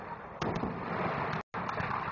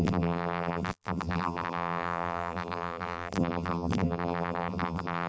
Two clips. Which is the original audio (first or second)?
first